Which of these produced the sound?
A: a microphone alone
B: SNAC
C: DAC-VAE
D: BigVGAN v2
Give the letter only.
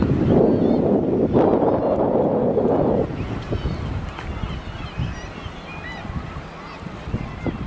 A